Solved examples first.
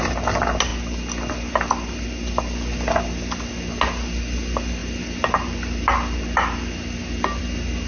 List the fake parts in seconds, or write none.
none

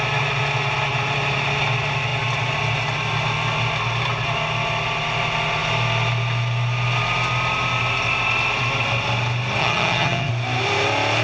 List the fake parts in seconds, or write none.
9.6-10.3 (vocoder, HiFi-GAN)